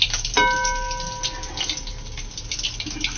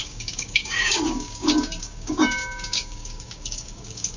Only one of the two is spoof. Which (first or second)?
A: second